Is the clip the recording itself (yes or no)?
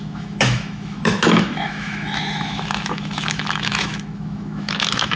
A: no